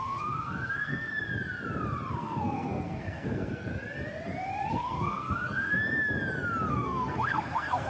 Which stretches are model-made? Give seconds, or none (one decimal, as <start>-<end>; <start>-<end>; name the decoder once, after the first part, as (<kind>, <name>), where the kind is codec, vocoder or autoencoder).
0.0-1.1 (codec, SNAC); 2.1-3.7; 4.7-5.8; 6.7-7.9

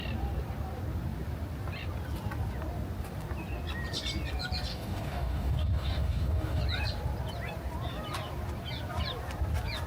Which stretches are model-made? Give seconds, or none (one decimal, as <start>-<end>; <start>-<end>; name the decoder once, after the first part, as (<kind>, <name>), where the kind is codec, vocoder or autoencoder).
4.7-6.6 (codec, DAC)

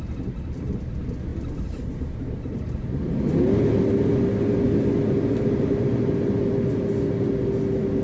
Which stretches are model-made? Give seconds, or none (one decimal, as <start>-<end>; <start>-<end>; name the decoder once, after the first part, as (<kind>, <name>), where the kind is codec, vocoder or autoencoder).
none